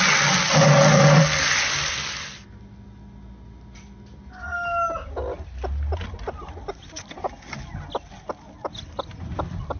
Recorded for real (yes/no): yes